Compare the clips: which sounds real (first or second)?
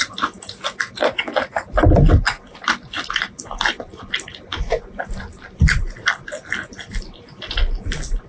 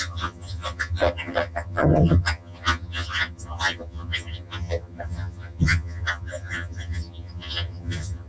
first